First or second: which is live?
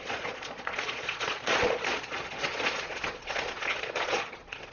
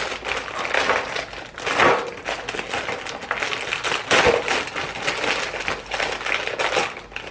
second